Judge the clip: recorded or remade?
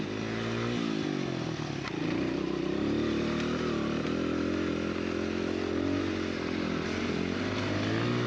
recorded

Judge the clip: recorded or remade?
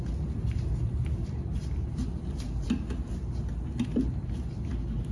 recorded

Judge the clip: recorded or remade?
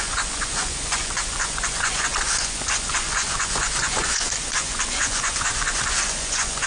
remade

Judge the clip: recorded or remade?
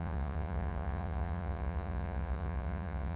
remade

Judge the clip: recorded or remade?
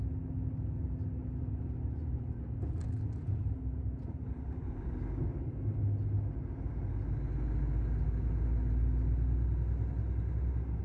recorded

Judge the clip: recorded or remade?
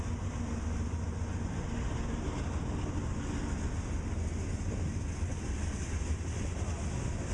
recorded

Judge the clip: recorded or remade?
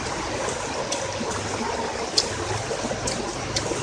recorded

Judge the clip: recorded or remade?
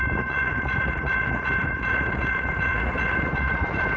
remade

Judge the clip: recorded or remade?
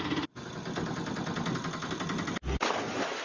recorded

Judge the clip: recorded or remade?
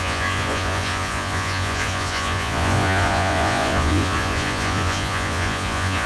remade